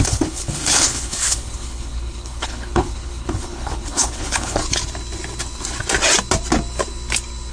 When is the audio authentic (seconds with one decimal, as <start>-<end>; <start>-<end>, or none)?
4.6-7.5